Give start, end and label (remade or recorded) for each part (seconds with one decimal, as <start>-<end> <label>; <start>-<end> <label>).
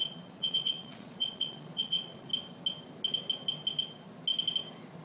0.0-2.3 remade; 2.3-5.0 recorded